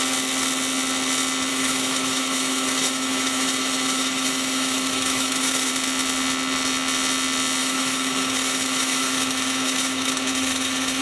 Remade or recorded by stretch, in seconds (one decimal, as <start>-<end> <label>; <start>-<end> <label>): 0.0-1.5 recorded; 1.5-5.7 remade; 5.7-7.6 recorded; 7.6-11.0 remade